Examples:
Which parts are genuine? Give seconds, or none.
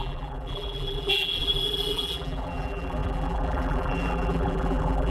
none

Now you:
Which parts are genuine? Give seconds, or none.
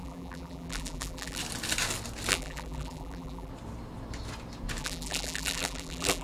1.4-2.3; 3.5-4.8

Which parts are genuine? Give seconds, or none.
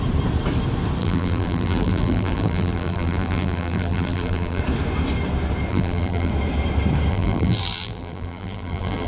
0.0-1.0; 4.6-5.7; 6.3-7.1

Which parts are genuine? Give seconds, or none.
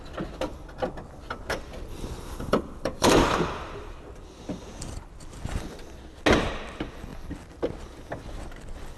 0.0-0.5; 5.7-7.1; 7.7-9.0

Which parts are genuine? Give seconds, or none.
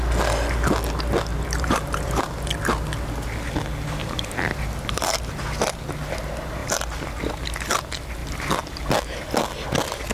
0.0-1.3; 2.5-4.0; 5.3-10.1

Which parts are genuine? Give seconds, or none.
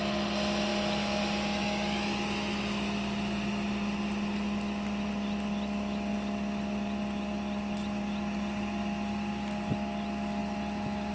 0.0-6.1; 9.3-10.4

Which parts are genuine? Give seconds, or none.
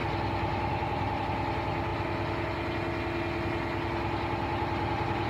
1.2-5.3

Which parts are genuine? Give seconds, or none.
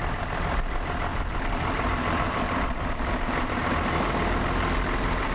0.0-1.1; 4.2-5.3